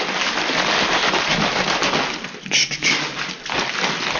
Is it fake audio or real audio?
real